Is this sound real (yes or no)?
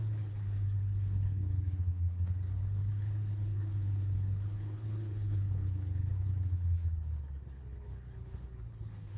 no